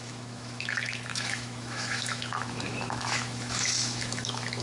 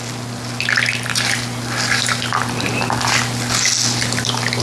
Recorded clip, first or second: second